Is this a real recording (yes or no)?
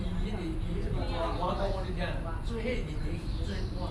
yes